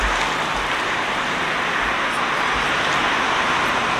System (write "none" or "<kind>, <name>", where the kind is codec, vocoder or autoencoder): none